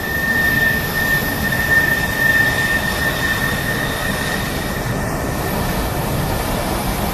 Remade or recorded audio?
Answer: remade